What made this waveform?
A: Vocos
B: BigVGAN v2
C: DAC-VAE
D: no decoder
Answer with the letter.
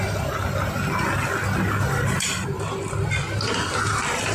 D